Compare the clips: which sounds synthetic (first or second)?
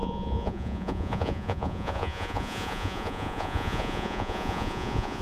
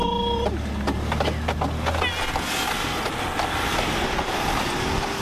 first